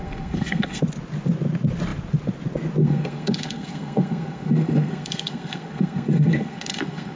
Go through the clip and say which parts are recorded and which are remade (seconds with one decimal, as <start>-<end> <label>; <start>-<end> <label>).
0.0-0.8 remade; 0.8-2.8 recorded; 2.8-7.2 remade